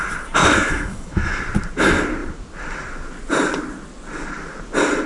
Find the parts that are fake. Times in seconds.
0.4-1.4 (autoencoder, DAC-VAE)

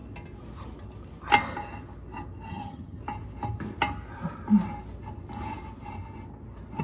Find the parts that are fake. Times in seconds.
2.5-3.0 (vocoder, HiFi-GAN)

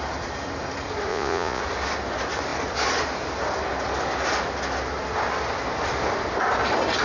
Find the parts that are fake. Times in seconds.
1.1-1.6 (vocoder, Vocos)